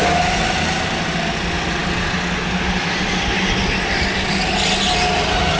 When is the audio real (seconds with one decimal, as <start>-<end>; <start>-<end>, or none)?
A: 0.0-5.6